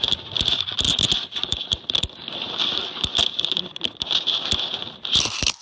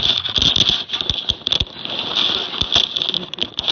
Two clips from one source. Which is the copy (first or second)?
first